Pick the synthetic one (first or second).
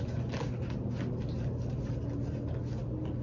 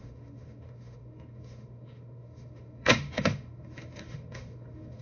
second